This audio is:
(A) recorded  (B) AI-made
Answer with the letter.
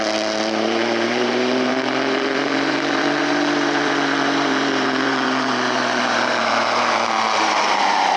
B